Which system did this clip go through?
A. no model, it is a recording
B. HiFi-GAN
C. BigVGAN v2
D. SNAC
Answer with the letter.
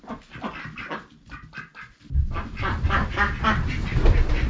A